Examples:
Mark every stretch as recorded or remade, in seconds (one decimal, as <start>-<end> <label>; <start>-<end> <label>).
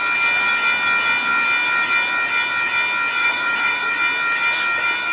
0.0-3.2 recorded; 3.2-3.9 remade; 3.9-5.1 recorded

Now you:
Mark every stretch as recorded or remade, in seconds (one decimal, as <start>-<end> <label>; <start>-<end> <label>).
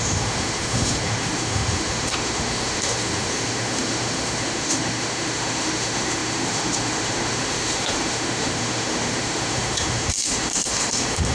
0.0-11.3 remade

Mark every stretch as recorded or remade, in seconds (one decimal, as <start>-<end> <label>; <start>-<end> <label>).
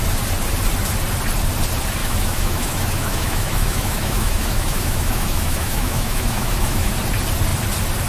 0.0-2.0 recorded; 2.0-6.9 remade; 6.9-8.1 recorded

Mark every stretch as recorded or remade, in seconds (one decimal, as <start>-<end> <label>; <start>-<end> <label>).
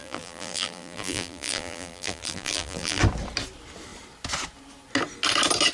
0.0-3.0 remade; 3.0-5.7 recorded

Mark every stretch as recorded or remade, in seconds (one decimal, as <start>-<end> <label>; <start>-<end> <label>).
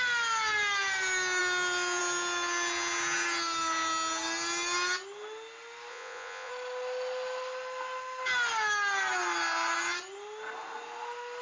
0.0-5.9 recorded; 5.9-6.5 remade; 6.5-11.4 recorded